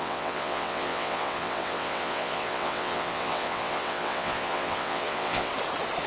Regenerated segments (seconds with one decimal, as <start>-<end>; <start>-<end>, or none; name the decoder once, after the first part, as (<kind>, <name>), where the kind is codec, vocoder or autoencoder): 0.0-5.5 (vocoder, WaveNeXt)